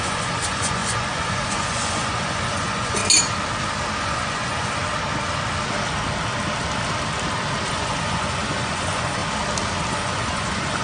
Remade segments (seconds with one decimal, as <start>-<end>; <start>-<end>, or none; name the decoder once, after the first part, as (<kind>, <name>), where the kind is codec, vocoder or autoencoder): 0.0-3.0 (vocoder, Vocos); 4.0-4.8; 7.7-9.2; 9.9-10.8